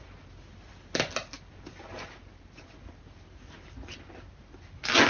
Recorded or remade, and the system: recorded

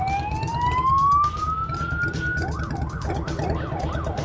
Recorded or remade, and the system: recorded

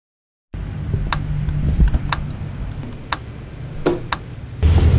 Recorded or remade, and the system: recorded